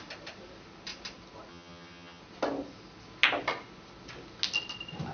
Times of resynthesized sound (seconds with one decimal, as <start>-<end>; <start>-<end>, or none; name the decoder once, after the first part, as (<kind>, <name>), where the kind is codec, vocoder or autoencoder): 1.5-2.2 (vocoder, HiFi-GAN)